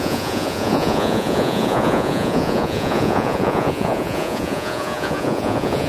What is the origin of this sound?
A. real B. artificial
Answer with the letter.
B